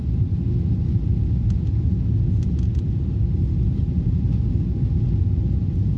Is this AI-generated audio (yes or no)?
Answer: no